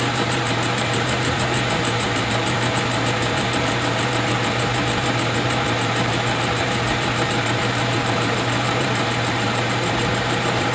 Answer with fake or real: fake